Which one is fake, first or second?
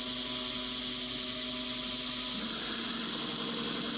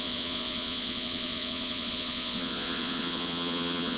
second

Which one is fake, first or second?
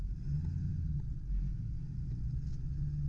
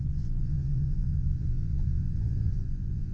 second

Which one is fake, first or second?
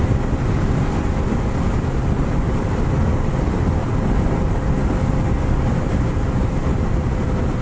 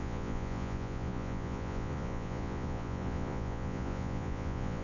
second